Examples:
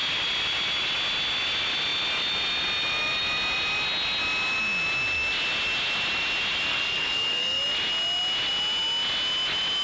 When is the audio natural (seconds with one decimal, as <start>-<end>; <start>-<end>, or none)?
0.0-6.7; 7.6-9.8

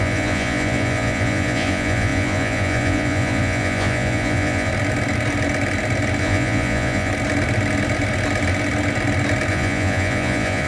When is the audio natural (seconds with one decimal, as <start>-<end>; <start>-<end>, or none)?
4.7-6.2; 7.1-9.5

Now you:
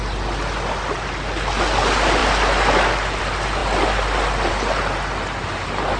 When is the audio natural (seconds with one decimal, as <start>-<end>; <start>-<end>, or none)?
0.0-6.0

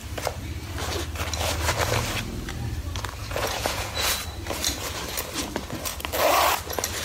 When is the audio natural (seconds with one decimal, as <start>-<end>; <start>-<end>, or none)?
0.0-3.2; 4.1-7.0

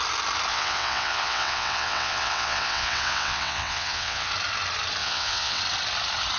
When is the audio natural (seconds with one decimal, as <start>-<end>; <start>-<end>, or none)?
0.0-0.5; 4.3-5.0; 5.6-6.4